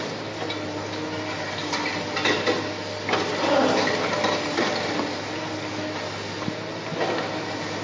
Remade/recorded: recorded